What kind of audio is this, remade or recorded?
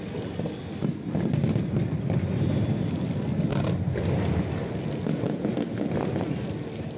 recorded